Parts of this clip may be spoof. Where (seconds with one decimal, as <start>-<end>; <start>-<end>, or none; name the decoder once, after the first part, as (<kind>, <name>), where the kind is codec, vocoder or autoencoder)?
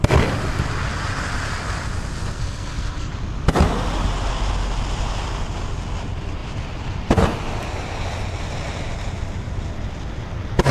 2.2-3.1 (codec, SNAC)